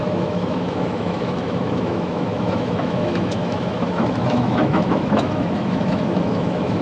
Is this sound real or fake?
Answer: fake